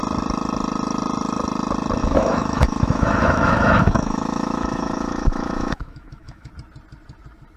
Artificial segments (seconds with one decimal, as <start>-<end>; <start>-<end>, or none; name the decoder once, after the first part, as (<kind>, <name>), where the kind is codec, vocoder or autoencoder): 2.0-6.5 (autoencoder, DAC-VAE)